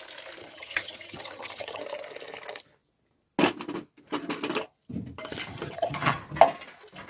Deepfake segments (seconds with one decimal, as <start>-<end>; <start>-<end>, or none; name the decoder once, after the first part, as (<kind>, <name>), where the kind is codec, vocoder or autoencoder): 0.4-1.8 (vocoder, HiFi-GAN); 5.5-6.2

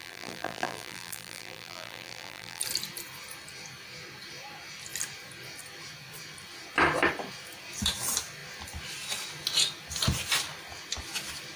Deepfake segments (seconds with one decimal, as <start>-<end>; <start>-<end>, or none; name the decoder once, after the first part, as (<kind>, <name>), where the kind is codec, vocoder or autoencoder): 0.0-2.6 (vocoder, BigVGAN v2)

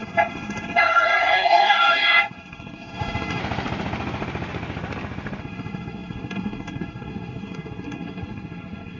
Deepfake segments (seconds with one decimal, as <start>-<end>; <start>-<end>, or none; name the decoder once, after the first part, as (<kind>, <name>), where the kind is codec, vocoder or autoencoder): 0.0-3.4 (codec, SNAC); 5.4-9.0

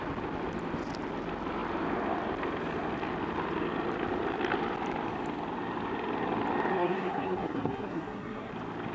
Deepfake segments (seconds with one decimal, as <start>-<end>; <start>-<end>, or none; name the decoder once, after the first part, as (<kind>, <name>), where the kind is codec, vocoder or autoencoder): 6.7-8.5 (codec, SNAC)

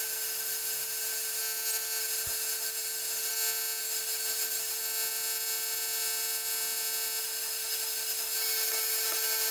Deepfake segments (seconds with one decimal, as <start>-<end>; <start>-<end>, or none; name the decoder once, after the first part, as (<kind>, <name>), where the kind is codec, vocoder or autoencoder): 0.0-1.4 (autoencoder, DAC-VAE); 2.0-3.3; 3.8-4.8; 7.2-9.5

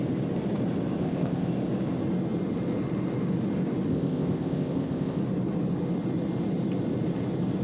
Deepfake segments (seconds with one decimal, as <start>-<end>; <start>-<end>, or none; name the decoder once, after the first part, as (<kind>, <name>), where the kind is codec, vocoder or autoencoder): 1.0-1.5 (codec, ZipCodec); 3.9-5.2